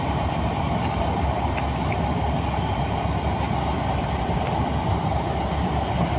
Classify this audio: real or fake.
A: real